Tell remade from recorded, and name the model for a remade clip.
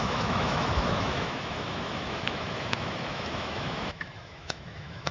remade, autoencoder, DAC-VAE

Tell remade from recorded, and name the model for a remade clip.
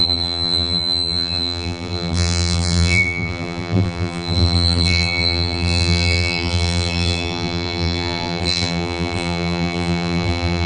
remade, vocoder, BigVGAN v2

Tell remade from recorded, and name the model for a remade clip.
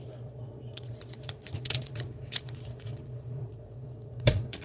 remade, vocoder, Vocos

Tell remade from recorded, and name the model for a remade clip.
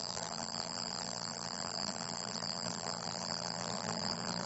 remade, vocoder, BigVGAN v2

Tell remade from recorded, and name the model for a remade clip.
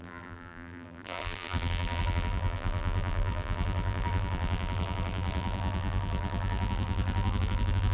remade, vocoder, BigVGAN v2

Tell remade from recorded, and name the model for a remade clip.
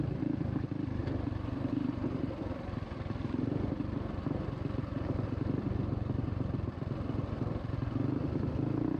remade, vocoder, BigVGAN v2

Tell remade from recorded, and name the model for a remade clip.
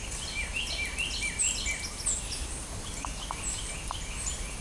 recorded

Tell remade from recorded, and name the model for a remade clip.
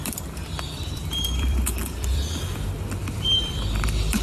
remade, vocoder, BigVGAN v2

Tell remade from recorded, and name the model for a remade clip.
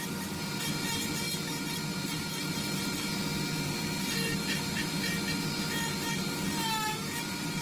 recorded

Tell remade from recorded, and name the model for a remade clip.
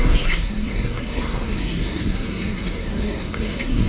remade, codec, SNAC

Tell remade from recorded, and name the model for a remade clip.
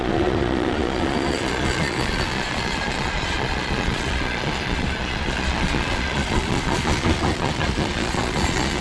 remade, vocoder, Vocos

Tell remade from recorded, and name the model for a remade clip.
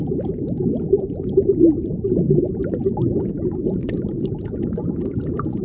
remade, vocoder, BigVGAN v2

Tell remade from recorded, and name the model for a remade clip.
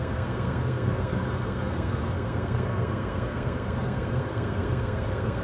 remade, codec, SNAC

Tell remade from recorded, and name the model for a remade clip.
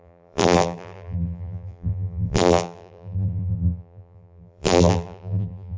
remade, vocoder, BigVGAN v2